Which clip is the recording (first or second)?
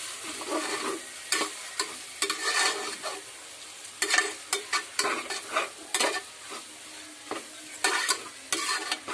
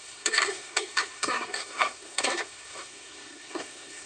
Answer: first